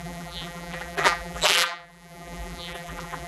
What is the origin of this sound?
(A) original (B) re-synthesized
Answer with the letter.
B